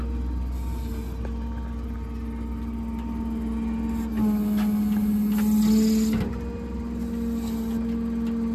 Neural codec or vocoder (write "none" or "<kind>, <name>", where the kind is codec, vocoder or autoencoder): none